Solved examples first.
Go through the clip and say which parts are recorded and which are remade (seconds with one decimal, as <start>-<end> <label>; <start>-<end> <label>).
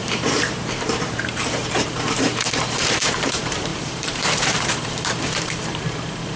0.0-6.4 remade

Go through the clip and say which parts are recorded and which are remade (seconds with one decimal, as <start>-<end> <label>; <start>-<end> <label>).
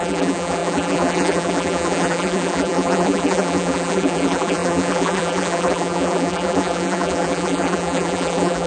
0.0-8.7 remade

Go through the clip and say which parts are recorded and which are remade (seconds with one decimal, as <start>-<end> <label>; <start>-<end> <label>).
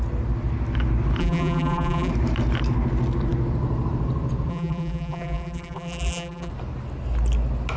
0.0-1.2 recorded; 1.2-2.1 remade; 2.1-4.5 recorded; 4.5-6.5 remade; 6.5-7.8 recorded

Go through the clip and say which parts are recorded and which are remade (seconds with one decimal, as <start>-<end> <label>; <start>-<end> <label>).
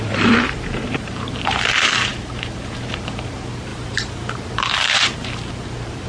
0.0-6.1 remade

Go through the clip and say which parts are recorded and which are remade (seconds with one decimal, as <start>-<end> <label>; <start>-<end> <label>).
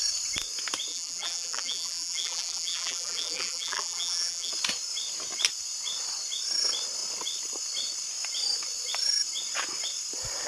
0.0-0.9 recorded; 0.9-4.5 remade; 4.5-10.5 recorded